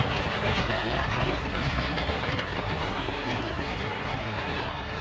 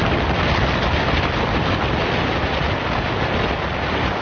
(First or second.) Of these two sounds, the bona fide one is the second